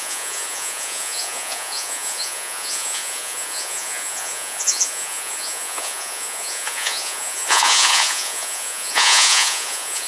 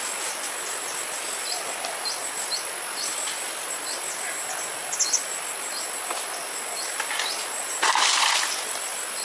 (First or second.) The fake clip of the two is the first